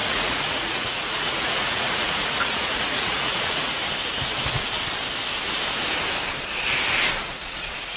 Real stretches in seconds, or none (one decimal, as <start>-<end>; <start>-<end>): 3.8-7.2